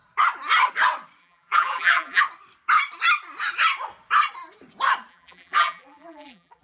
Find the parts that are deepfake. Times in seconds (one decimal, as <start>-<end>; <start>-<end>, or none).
1.2-2.2; 5.1-6.6